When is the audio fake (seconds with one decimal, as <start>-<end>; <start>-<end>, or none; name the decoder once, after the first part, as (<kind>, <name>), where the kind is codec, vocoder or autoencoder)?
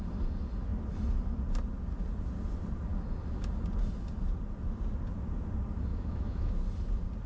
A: 5.9-6.5 (autoencoder, DAC-VAE)